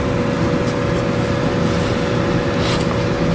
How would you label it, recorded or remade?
recorded